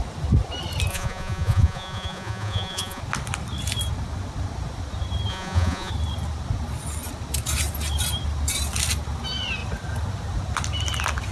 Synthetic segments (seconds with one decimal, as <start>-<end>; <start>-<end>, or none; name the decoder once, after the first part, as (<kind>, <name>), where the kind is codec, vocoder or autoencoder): 0.9-3.0 (vocoder, Vocos); 5.3-5.9